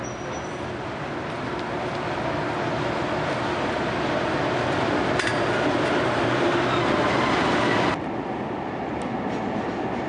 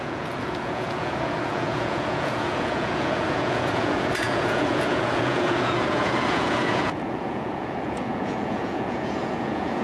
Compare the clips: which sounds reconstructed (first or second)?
second